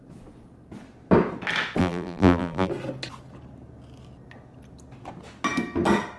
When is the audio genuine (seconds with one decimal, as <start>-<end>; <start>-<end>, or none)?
0.0-1.8; 2.7-6.2